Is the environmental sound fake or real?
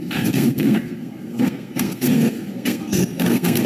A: fake